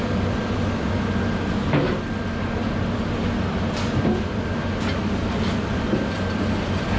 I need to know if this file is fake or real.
fake